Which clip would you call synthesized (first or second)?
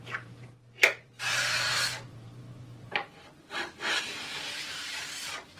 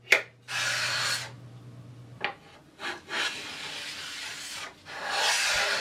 first